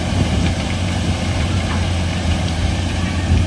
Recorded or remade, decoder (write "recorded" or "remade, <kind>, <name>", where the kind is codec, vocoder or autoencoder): remade, vocoder, BigVGAN v2